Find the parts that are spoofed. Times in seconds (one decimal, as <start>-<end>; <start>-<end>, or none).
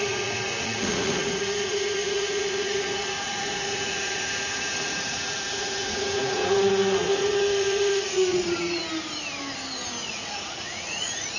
0.0-8.8; 10.1-11.4